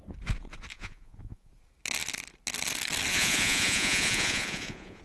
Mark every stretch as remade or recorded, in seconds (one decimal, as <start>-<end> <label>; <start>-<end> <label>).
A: 0.0-0.7 recorded; 0.7-1.5 remade; 1.5-3.1 recorded; 3.1-5.0 remade